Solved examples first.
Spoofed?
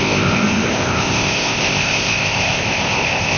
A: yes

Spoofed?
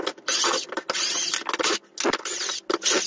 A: no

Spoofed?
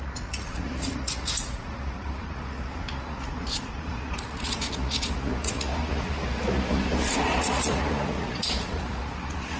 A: yes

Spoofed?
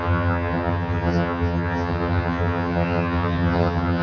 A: yes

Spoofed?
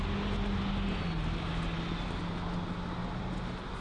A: no